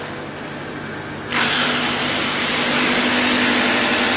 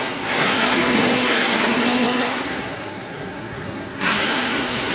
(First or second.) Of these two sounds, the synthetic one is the second